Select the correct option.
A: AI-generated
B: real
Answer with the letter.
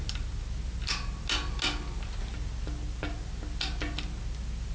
B